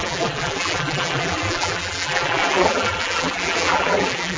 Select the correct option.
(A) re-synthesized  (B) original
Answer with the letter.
A